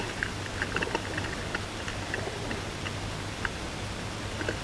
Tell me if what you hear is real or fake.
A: real